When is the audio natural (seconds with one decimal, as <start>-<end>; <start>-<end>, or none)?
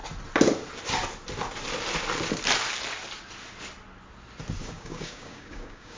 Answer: 0.0-4.6